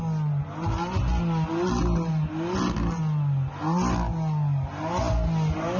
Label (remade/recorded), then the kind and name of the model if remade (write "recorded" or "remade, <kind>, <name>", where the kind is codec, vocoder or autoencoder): recorded